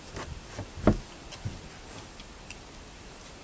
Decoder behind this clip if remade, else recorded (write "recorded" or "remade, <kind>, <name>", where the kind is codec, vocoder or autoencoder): recorded